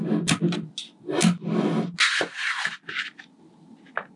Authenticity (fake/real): real